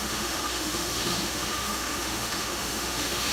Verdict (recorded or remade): remade